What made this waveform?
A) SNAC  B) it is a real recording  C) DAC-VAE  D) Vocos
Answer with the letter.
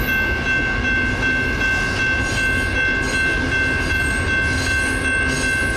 B